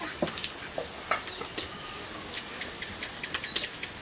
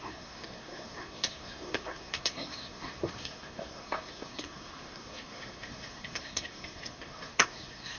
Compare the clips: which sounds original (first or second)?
first